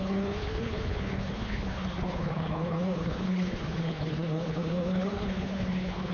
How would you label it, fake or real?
fake